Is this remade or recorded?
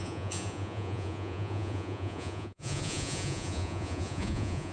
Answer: remade